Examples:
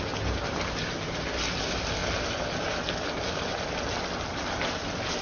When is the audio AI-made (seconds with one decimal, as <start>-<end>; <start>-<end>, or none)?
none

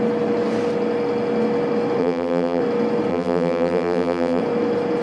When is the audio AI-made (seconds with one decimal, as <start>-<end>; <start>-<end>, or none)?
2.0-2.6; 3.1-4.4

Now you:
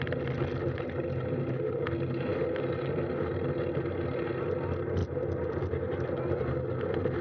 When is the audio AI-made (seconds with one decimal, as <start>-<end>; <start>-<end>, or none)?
5.0-5.6